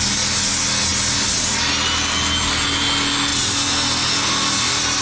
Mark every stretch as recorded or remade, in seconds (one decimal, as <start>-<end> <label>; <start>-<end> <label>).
0.0-5.0 recorded